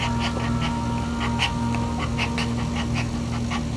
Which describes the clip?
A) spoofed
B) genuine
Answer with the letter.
B